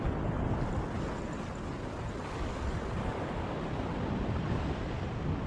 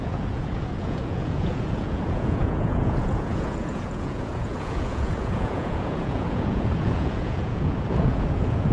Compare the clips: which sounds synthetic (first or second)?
second